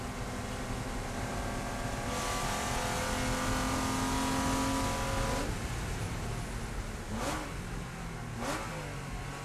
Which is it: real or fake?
real